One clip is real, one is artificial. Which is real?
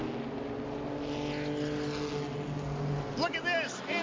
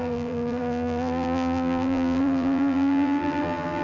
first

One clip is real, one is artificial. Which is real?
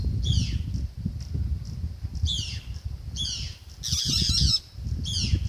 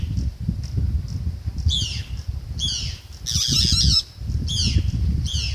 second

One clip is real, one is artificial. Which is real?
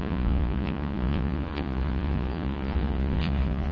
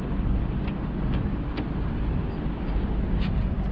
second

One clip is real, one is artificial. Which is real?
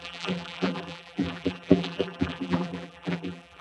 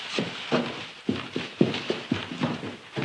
second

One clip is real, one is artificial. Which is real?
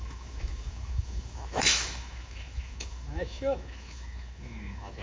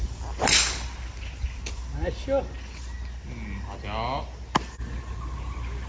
second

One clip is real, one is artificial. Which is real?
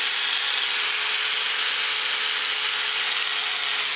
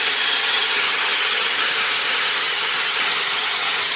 first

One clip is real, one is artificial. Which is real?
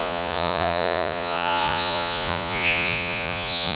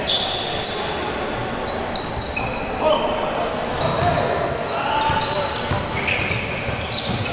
second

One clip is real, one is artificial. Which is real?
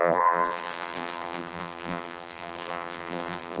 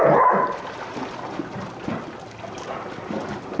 second